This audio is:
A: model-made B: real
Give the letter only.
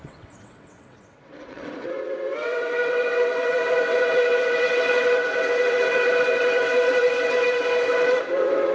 A